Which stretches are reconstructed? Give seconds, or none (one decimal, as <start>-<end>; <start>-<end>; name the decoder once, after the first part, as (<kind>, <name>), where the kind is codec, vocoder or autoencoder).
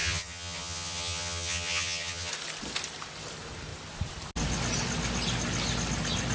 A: 0.0-2.3 (vocoder, HiFi-GAN)